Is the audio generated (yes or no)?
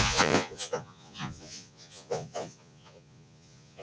yes